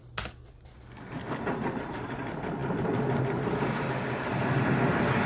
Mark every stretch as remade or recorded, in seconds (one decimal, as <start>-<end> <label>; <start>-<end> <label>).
0.0-5.3 recorded